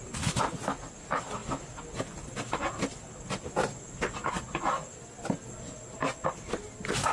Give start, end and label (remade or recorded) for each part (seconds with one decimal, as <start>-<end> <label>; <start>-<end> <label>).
0.0-7.1 recorded